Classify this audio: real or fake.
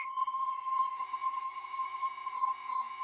fake